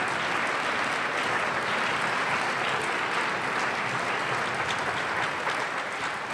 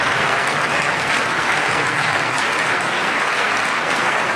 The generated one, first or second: second